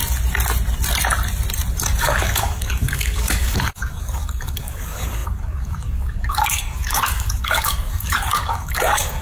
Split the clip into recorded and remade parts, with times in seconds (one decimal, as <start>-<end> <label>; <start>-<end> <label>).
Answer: 0.0-2.0 recorded; 2.0-9.2 remade